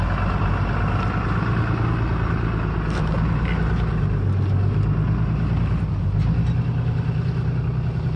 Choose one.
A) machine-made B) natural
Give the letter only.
B